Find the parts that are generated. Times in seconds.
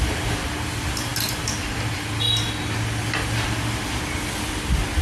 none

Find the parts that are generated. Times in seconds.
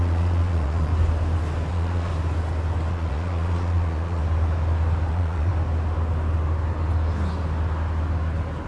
0.0-0.9 (vocoder, Vocos); 1.7-2.1; 2.9-4.2; 5.1-5.5